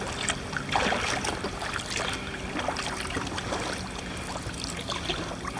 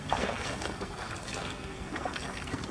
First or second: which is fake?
second